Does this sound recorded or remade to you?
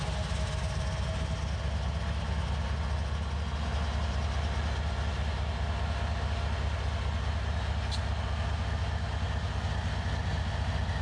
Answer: recorded